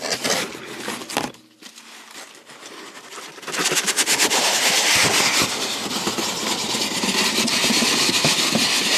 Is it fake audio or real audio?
real